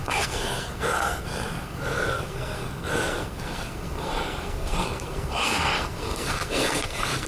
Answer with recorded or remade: remade